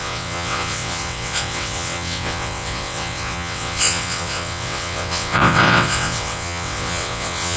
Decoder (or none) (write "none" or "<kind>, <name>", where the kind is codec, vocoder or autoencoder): vocoder, WaveNeXt